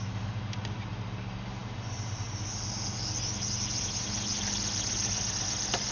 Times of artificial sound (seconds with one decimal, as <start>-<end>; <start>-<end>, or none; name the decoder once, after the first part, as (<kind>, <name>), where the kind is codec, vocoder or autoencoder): none